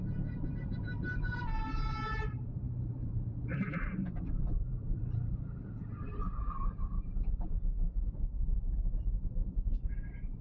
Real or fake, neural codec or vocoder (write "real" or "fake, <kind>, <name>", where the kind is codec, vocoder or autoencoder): fake, vocoder, BigVGAN v2